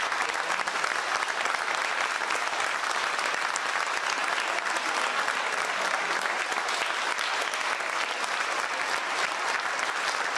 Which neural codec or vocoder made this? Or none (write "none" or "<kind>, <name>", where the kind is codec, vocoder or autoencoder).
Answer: none